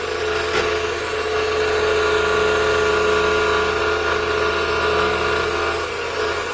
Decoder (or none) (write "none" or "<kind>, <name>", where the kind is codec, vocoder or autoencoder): none